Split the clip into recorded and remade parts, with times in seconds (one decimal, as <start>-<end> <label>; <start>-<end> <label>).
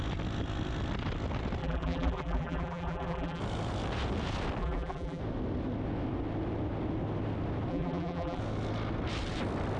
0.0-1.6 recorded; 1.6-3.4 remade; 3.4-4.6 recorded; 4.6-5.2 remade; 5.2-7.7 recorded; 7.7-8.4 remade; 8.4-9.8 recorded